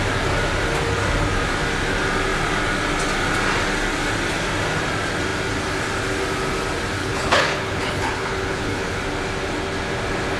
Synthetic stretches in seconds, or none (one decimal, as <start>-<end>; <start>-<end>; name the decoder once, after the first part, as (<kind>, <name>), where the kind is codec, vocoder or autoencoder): 7.0-9.0 (codec, HILCodec)

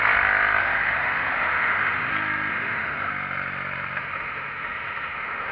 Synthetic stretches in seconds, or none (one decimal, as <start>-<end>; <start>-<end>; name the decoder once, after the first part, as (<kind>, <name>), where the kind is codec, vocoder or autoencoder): 0.6-2.1 (autoencoder, DAC-VAE); 2.5-3.1; 4.0-5.5

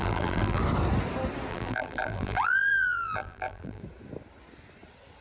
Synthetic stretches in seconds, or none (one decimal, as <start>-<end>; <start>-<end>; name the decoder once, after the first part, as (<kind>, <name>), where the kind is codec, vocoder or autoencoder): 0.0-0.6 (vocoder, BigVGAN v2); 1.5-3.8

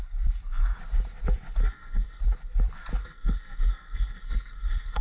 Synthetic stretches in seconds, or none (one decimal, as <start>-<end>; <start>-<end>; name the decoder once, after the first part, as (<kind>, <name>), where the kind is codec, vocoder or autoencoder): 1.6-2.2 (codec, SNAC); 3.0-5.0

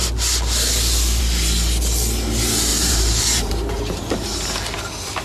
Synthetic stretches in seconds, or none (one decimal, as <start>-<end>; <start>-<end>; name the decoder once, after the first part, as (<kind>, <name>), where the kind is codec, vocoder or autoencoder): 2.7-4.8 (vocoder, BigVGAN v2)

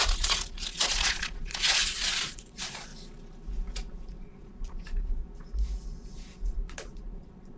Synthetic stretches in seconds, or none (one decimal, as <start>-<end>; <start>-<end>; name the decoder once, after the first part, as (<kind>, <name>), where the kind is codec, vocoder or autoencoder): 0.0-2.9 (vocoder, Vocos); 3.9-5.2; 5.9-7.6

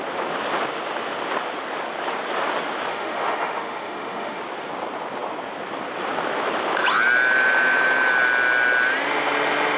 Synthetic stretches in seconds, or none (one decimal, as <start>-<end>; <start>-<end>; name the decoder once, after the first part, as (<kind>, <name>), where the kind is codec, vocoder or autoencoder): 2.9-4.4 (autoencoder, DAC-VAE)